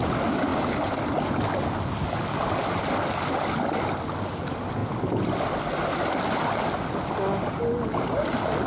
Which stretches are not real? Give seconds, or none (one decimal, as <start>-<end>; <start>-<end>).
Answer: none